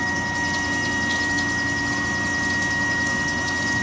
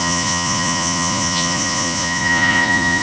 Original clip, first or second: first